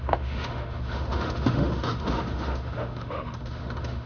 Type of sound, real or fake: fake